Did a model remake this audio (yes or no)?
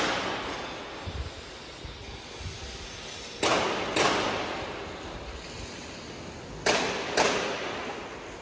no